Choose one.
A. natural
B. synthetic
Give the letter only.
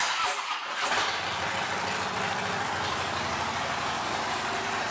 B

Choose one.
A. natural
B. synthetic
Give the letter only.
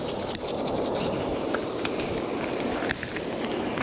B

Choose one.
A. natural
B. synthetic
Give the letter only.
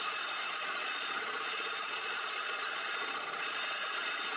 B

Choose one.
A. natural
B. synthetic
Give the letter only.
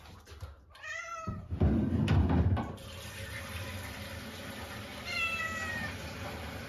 A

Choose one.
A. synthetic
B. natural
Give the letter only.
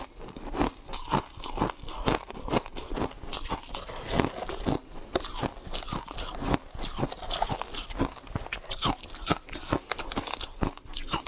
B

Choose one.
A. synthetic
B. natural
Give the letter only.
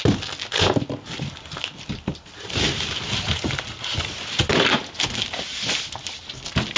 B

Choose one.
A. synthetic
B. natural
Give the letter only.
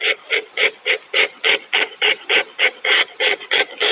A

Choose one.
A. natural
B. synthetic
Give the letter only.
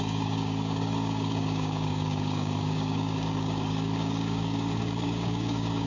B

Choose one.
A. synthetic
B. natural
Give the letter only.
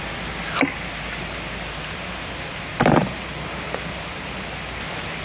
B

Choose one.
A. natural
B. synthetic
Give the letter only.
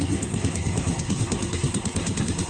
B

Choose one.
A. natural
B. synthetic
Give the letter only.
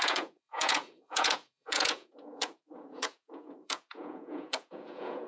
B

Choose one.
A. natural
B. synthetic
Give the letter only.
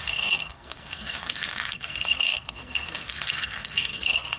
B